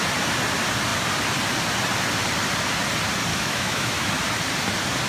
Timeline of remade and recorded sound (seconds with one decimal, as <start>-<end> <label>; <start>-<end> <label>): 0.0-3.3 recorded; 3.3-4.1 remade; 4.1-5.1 recorded